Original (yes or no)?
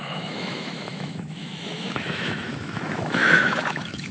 no